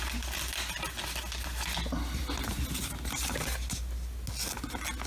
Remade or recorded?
recorded